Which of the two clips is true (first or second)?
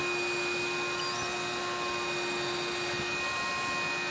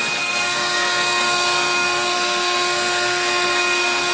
first